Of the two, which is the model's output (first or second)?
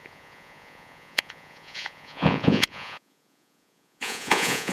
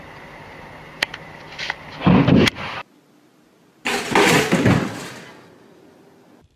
first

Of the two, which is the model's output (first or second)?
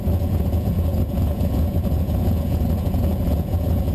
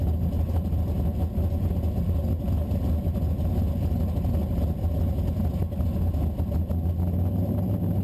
first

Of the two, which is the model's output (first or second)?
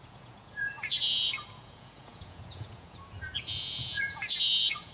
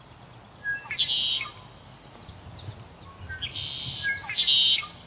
first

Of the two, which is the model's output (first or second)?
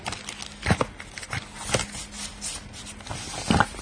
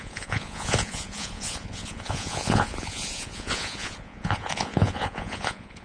second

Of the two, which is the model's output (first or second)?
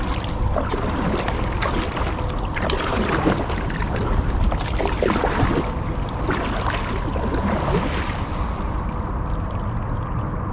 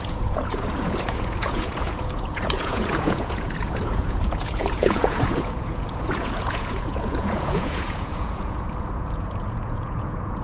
second